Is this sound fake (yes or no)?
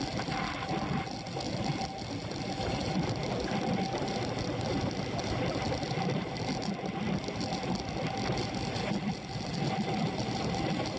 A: no